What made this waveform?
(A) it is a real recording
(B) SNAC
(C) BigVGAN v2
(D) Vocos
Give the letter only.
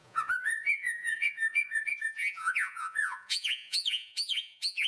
D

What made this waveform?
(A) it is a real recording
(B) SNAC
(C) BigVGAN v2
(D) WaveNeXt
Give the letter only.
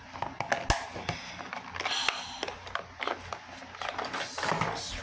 A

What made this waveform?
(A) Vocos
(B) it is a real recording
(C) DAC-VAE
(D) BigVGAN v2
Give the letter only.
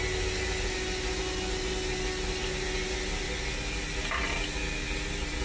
B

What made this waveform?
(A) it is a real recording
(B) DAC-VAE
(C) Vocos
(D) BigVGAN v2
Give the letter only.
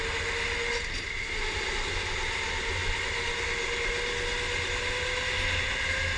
A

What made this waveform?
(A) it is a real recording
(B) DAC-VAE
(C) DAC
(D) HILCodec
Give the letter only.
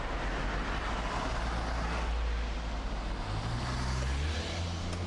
A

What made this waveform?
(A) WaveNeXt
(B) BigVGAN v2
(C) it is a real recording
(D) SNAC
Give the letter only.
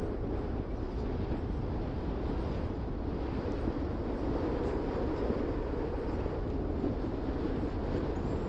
C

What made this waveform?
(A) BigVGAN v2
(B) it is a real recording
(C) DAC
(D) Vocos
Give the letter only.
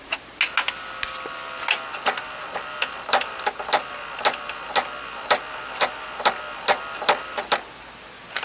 B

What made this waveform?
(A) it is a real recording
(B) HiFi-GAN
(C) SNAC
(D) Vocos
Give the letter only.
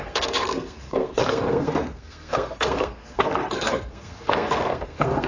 C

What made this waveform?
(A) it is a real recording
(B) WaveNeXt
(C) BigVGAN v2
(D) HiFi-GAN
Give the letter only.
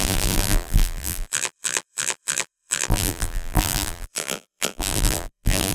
C